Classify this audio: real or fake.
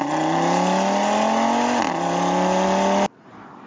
real